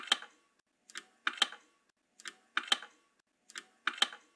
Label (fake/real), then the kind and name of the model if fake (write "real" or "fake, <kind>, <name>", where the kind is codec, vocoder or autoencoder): real